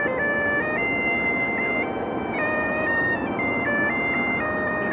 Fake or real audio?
real